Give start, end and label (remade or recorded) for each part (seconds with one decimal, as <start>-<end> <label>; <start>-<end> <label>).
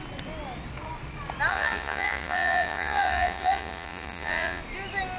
0.0-1.5 recorded; 1.5-4.6 remade; 4.6-5.2 recorded